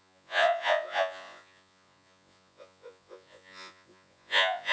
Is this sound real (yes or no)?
no